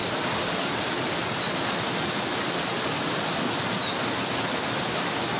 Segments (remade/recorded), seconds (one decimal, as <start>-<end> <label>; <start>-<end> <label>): 0.0-5.4 recorded